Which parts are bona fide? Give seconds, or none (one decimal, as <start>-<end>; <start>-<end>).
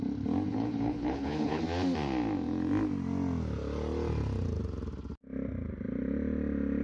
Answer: 0.0-0.5; 1.6-6.8